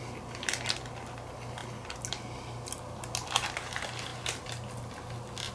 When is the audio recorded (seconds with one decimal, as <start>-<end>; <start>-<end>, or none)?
0.0-5.5